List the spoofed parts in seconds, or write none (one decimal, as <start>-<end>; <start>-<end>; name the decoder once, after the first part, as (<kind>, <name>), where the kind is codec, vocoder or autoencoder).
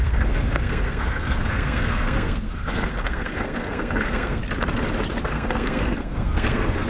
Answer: 0.0-4.4 (codec, SNAC); 5.2-6.9